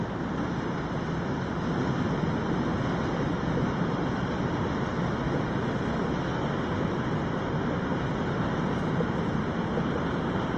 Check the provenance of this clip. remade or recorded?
recorded